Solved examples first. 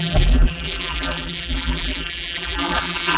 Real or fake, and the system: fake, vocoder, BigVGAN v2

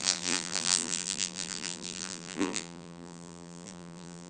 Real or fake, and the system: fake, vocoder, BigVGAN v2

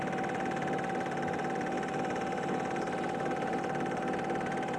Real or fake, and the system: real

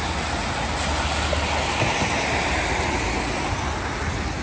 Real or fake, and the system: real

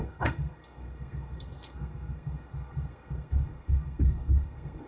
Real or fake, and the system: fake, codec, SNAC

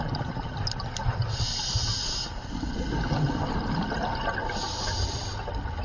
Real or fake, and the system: real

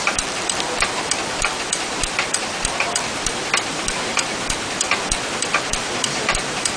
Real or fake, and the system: fake, vocoder, BigVGAN v2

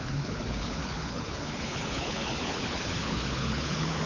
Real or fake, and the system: fake, codec, HILCodec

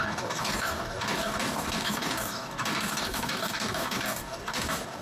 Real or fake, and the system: fake, codec, DAC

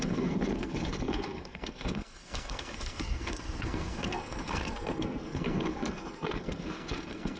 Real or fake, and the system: fake, codec, SNAC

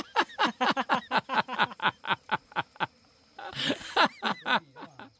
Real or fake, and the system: real